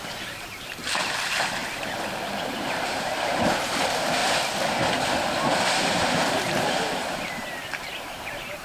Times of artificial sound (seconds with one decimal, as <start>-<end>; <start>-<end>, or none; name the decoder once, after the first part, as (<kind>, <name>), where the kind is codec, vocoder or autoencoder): 0.0-1.6 (vocoder, BigVGAN v2); 2.5-4.2; 5.8-8.6